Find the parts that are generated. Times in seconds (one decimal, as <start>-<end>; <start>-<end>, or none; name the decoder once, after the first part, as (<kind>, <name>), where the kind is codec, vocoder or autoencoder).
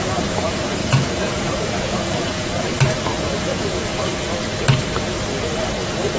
0.0-2.7 (vocoder, Vocos); 3.2-3.9